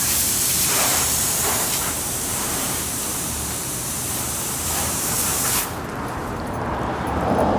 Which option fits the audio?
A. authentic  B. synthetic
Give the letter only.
B